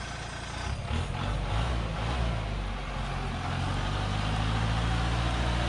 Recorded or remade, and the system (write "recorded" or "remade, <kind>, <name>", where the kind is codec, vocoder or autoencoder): recorded